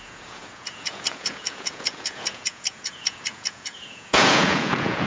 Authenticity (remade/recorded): remade